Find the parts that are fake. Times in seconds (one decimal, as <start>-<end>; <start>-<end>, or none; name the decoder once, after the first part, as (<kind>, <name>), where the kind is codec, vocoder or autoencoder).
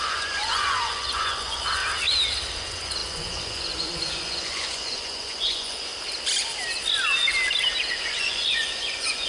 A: 0.0-1.8 (vocoder, Vocos); 2.6-5.9; 7.9-9.3